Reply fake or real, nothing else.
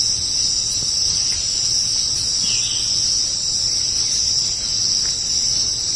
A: real